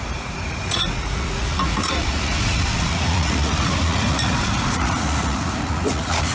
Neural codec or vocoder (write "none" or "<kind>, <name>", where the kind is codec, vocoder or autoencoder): vocoder, Vocos